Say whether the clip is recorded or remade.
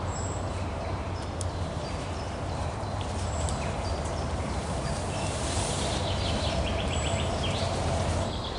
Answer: remade